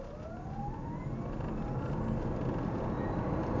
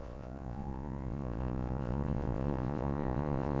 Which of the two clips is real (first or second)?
first